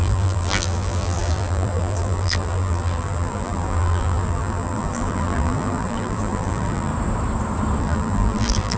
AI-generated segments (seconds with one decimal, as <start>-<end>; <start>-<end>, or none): 0.0-6.9; 7.8-8.8